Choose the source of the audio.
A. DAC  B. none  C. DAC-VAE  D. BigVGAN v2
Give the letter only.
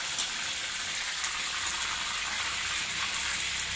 B